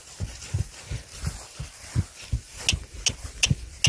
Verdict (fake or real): real